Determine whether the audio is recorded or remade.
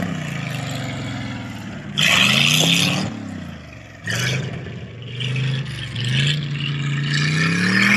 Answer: recorded